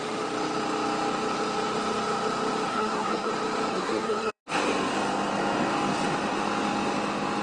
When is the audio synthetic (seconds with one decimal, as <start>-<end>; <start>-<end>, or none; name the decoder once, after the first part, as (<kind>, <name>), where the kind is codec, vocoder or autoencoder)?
2.7-3.3 (codec, SNAC); 3.7-4.4